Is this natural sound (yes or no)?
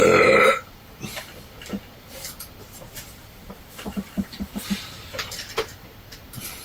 no